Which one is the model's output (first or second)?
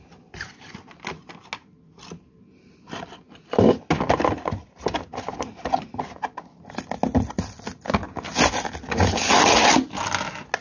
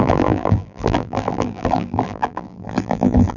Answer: second